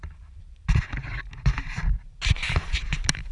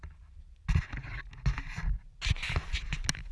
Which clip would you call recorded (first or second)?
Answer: second